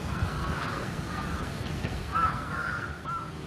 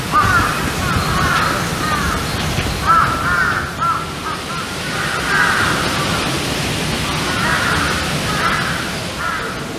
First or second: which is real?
second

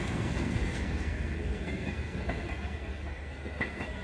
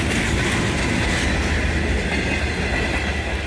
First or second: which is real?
second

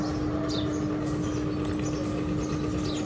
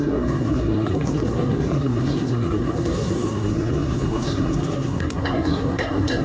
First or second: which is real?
first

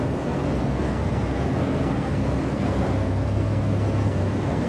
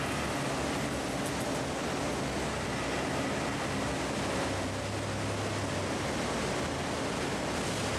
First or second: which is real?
second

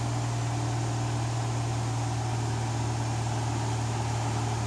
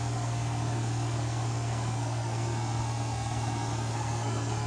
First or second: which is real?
first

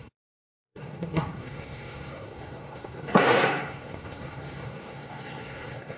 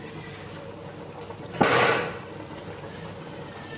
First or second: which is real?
second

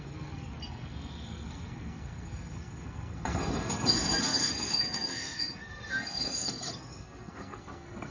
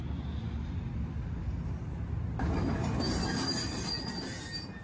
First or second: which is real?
second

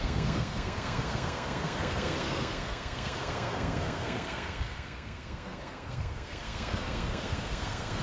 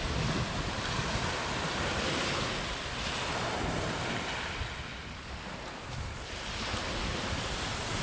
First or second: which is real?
second